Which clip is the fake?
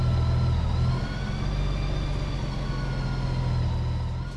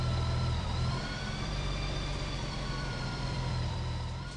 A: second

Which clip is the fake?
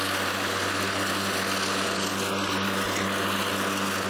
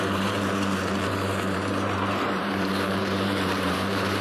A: second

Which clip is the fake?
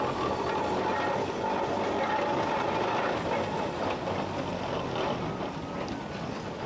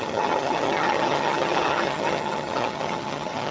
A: second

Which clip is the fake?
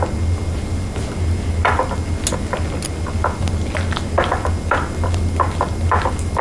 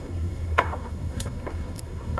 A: second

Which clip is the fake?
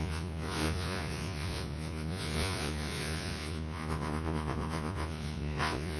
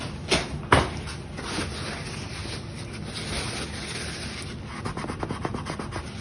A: first